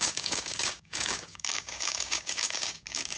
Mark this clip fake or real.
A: fake